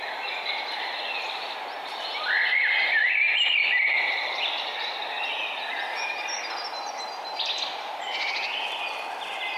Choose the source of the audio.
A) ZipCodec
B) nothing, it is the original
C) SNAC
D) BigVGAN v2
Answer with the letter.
B